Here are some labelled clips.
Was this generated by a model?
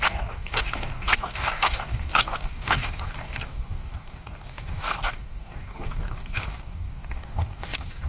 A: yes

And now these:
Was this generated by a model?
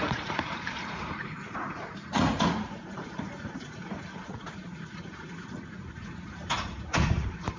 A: yes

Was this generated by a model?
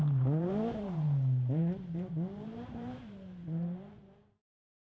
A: yes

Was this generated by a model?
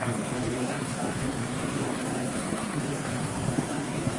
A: yes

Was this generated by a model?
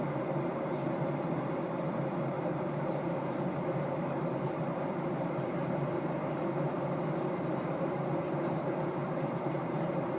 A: yes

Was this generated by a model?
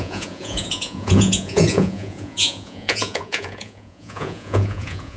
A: yes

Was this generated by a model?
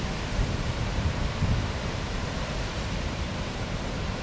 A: yes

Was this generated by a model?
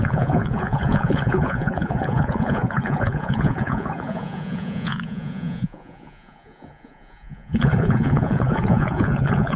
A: yes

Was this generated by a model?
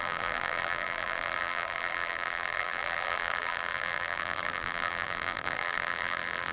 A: yes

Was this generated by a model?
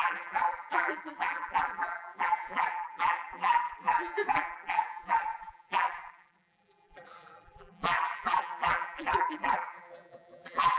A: yes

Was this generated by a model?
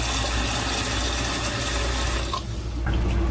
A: no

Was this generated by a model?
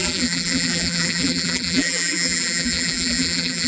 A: yes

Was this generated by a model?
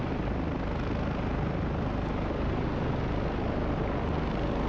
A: no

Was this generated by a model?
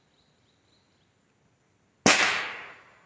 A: no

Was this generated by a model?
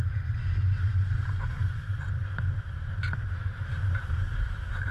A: no